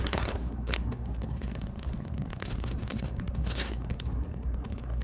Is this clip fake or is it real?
fake